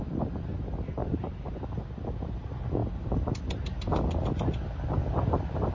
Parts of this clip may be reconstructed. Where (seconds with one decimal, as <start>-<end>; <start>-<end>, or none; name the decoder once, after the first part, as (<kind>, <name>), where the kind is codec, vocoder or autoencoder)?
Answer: 1.0-1.5 (vocoder, BigVGAN v2)

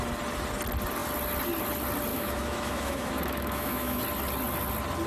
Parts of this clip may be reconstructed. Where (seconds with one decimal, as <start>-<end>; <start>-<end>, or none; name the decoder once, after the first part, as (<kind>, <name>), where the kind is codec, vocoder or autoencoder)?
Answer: 2.1-4.0 (autoencoder, DAC-VAE)

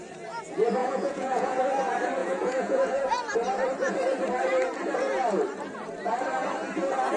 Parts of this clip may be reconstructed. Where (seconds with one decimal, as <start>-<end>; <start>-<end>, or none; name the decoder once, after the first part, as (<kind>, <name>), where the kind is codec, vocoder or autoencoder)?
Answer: 0.8-1.6 (vocoder, Vocos); 2.2-3.0

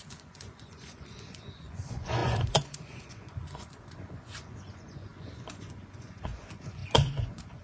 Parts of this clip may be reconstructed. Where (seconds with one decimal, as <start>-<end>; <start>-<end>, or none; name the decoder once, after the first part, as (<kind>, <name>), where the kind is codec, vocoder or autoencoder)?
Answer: 0.0-7.6 (vocoder, Vocos)

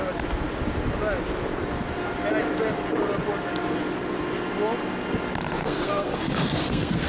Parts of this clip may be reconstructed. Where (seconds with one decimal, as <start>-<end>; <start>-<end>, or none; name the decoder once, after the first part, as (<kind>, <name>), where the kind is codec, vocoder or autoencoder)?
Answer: 5.6-7.1 (codec, SNAC)